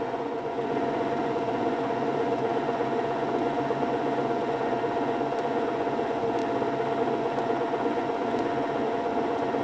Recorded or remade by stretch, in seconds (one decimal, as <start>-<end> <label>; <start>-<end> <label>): 0.0-6.4 remade; 6.4-7.0 recorded; 7.0-9.6 remade